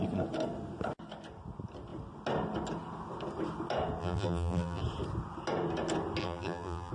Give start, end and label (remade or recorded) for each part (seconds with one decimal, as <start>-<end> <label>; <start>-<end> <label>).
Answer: 0.0-4.0 recorded; 4.0-4.8 remade; 4.8-6.2 recorded; 6.2-6.9 remade